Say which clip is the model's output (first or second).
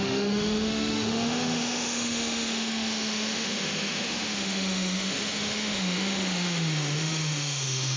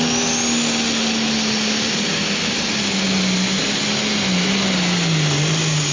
first